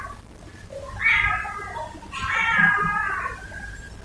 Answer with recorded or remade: recorded